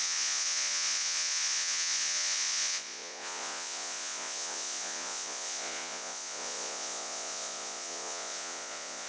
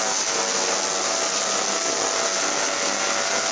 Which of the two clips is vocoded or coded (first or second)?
first